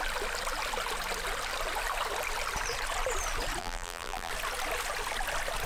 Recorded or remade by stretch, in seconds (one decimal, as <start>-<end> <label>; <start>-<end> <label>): 0.0-3.6 recorded; 3.6-4.3 remade; 4.3-5.7 recorded